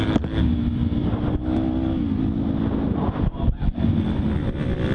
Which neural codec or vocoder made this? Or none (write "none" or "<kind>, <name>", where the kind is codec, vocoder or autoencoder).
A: none